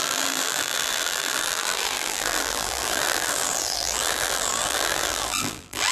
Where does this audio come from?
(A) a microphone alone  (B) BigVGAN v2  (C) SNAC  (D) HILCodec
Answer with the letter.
B